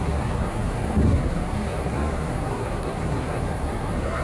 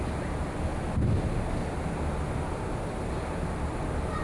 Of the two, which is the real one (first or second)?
second